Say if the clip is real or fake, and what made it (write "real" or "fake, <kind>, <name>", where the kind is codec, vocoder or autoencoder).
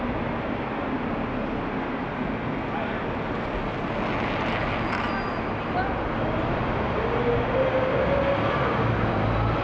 real